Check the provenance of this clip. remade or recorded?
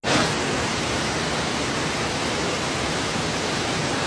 recorded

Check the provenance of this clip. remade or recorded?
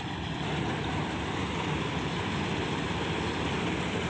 remade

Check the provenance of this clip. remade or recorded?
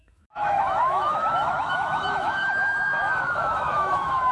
remade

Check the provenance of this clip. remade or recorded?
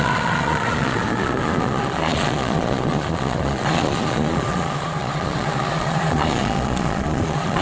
remade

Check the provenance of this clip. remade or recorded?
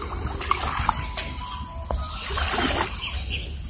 recorded